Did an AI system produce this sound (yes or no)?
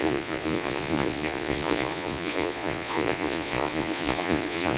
yes